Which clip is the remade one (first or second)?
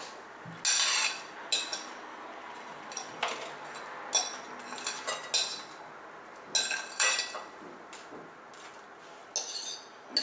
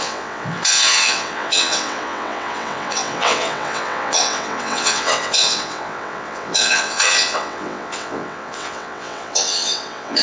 second